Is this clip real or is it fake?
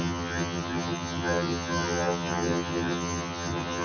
fake